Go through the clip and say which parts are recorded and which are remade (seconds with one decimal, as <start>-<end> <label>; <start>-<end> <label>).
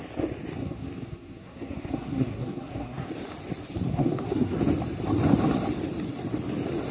0.0-0.6 recorded; 0.6-3.1 remade; 3.1-3.9 recorded; 3.9-4.6 remade; 4.6-6.9 recorded